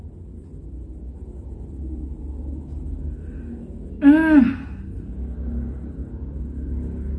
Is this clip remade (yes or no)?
no